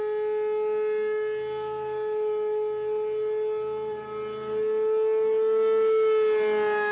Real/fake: real